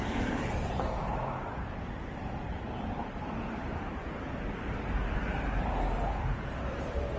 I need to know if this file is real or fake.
fake